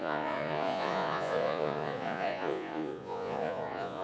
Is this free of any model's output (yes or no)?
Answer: no